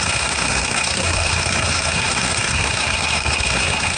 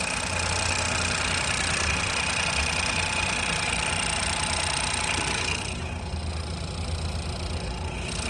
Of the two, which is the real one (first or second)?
second